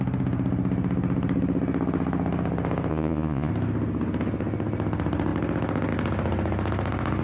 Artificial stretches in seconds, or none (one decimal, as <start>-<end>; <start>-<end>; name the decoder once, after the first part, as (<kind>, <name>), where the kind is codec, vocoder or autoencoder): 2.9-3.5 (vocoder, Vocos)